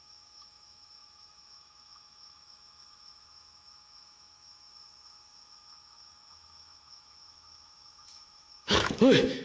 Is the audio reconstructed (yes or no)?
yes